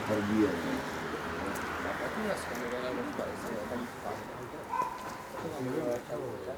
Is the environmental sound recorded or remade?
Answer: recorded